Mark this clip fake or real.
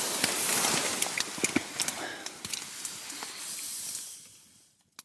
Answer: real